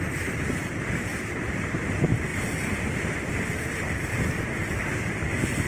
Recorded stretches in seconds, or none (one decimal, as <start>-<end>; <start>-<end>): 0.0-1.1; 1.9-4.6; 5.3-5.7